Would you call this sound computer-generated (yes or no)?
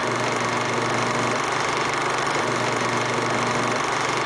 no